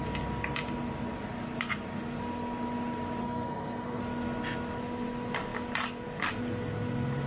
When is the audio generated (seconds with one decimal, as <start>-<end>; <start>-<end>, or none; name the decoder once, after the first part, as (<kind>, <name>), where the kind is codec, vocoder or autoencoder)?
3.2-4.0 (codec, SNAC)

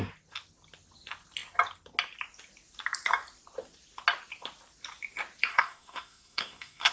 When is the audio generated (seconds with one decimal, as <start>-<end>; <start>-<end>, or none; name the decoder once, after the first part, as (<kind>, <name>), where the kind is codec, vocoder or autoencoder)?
5.5-6.9 (codec, SNAC)